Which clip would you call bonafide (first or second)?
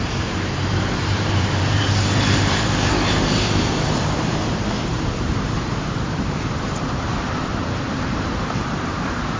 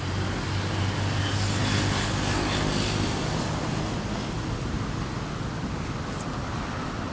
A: second